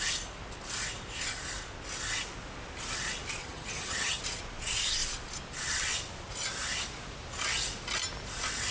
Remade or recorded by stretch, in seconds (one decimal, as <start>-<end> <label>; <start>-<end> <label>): 0.0-3.4 recorded; 3.4-4.2 remade; 4.2-8.7 recorded